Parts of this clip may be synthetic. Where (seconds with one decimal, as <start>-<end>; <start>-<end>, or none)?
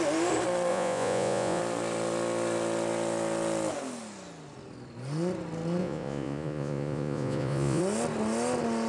0.7-1.6; 5.8-7.8